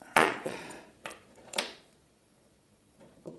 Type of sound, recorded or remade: remade